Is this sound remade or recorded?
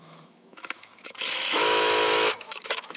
remade